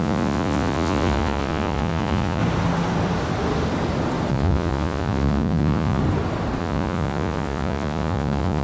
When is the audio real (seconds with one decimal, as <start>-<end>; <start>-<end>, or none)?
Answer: 2.4-4.3; 6.0-6.6